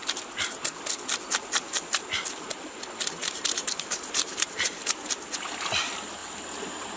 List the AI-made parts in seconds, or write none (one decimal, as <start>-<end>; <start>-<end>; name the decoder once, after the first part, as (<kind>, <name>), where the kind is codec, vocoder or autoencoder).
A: 3.2-5.1 (vocoder, BigVGAN v2); 6.2-7.0